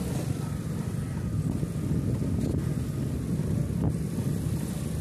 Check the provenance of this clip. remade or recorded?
recorded